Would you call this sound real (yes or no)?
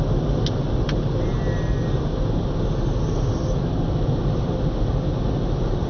yes